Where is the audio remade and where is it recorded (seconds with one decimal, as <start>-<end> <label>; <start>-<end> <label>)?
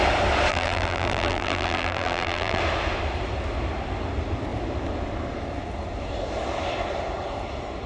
0.0-0.5 recorded; 0.5-2.6 remade; 2.6-7.9 recorded